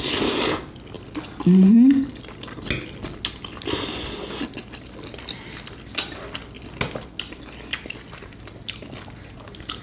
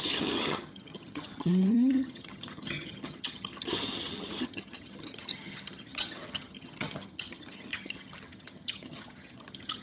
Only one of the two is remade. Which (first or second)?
second